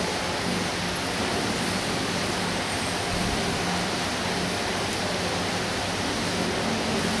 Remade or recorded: recorded